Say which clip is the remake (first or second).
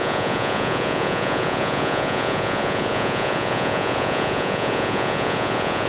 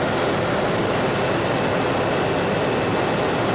first